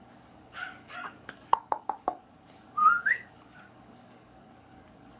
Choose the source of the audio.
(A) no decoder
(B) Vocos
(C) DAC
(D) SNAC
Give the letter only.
C